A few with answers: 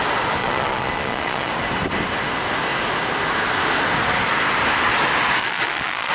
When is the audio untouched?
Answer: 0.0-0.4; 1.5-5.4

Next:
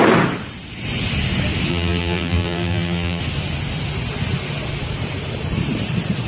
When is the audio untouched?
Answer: 0.0-1.7; 3.2-6.3

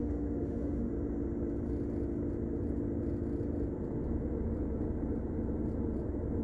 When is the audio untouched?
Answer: 0.9-6.4

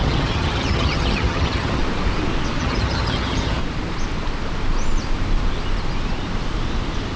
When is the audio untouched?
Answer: 1.8-2.6; 3.6-7.2